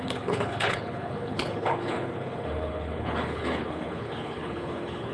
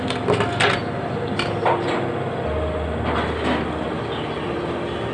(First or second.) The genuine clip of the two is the second